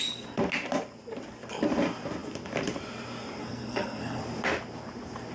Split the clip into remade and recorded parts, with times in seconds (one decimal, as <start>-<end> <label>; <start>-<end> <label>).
0.0-3.4 recorded; 3.4-4.2 remade; 4.2-5.3 recorded